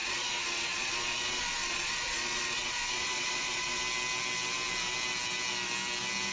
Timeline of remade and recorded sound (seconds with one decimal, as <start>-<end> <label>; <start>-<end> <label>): 0.0-3.8 remade; 3.8-6.3 recorded